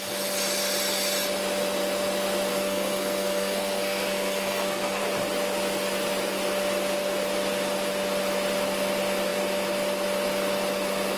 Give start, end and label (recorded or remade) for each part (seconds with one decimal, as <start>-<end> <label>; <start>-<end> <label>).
0.0-2.5 recorded; 2.5-5.0 remade; 5.0-11.2 recorded